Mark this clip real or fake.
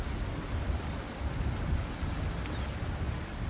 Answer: real